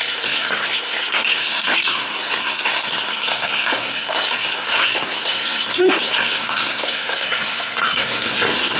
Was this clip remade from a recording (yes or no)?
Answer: yes